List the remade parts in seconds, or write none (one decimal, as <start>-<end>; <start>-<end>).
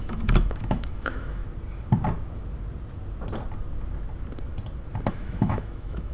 0.0-1.4; 5.1-6.1